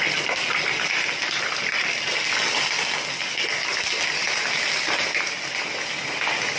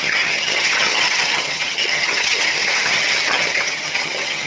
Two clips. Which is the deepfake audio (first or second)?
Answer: second